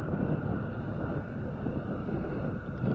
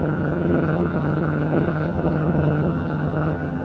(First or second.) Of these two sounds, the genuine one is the first